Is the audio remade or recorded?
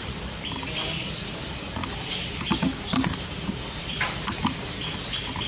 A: recorded